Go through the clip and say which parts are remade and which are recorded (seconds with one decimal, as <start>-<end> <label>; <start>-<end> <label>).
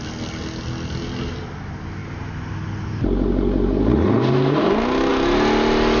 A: 0.0-6.0 recorded